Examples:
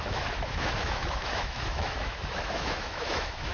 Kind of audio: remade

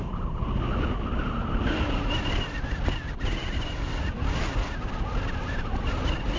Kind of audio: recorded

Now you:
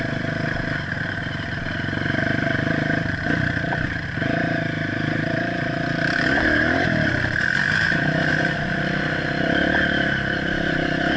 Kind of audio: recorded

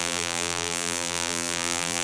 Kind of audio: remade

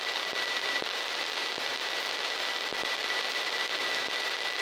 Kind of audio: remade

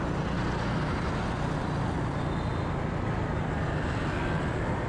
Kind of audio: recorded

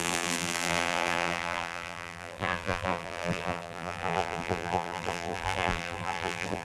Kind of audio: remade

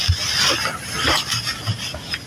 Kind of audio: recorded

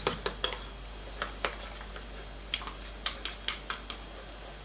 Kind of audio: recorded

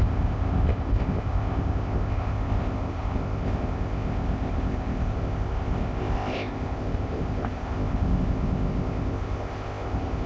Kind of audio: remade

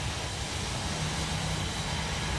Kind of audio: recorded